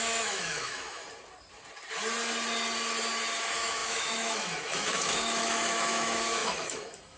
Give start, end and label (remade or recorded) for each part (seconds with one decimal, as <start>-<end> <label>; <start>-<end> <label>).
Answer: 0.0-1.0 remade; 1.0-3.4 recorded; 3.4-7.2 remade